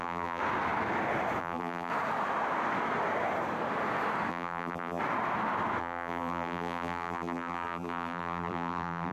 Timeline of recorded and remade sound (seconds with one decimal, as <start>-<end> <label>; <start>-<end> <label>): 0.0-0.4 remade; 0.4-1.4 recorded; 1.4-1.9 remade; 1.9-4.3 recorded; 4.3-5.0 remade; 5.0-5.8 recorded; 5.8-9.1 remade